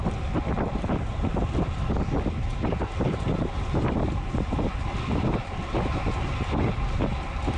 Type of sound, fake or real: real